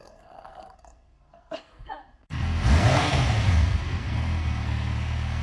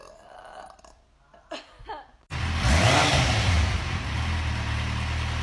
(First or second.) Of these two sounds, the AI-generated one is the first